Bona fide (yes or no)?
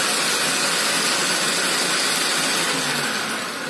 yes